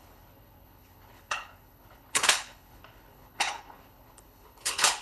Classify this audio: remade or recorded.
remade